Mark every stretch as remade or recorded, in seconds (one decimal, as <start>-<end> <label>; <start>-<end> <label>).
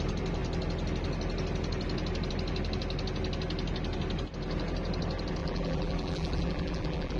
0.0-5.4 recorded; 5.4-7.2 remade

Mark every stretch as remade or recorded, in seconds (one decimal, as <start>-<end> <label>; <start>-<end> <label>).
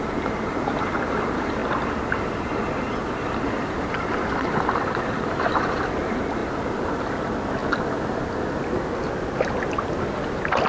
0.0-1.6 remade; 1.6-3.7 recorded; 3.7-6.4 remade; 6.4-6.9 recorded; 6.9-7.6 remade; 7.6-10.7 recorded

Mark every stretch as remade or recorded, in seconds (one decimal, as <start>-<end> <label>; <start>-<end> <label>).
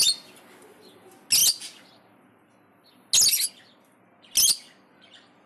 0.0-5.5 recorded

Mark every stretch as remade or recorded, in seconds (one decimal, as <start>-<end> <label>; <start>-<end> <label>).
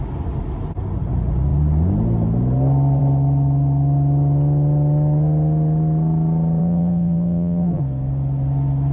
0.0-6.6 recorded; 6.6-7.8 remade; 7.8-8.9 recorded